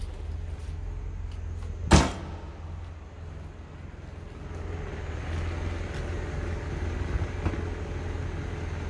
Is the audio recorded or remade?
recorded